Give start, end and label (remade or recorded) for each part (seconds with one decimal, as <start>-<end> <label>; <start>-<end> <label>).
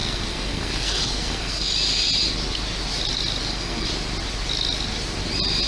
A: 0.0-1.7 remade; 1.7-3.4 recorded; 3.4-3.9 remade; 3.9-5.7 recorded